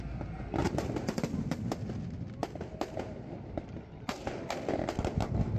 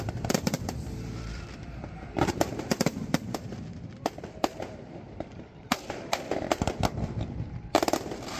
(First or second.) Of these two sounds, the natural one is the first